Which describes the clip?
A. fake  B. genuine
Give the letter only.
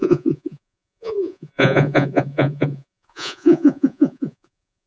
A